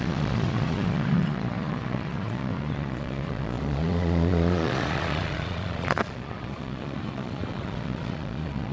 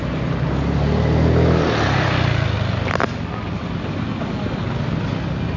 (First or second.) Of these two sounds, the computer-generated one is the first